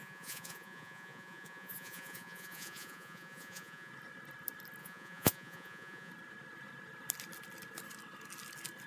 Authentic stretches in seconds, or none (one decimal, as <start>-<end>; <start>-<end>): 3.9-4.8; 6.1-8.9